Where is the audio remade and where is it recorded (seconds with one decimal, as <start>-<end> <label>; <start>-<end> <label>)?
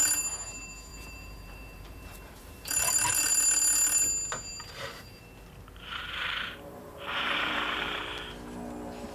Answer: 0.0-0.9 recorded; 0.9-3.3 remade; 3.3-4.5 recorded; 4.5-5.2 remade; 5.2-6.0 recorded; 6.0-8.0 remade; 8.0-9.1 recorded